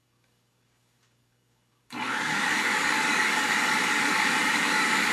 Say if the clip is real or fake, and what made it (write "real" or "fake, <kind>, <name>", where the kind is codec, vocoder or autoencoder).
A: fake, codec, DAC